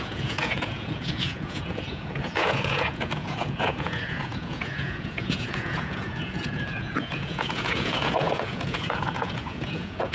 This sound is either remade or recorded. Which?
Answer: remade